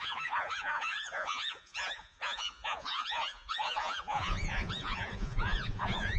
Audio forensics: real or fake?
fake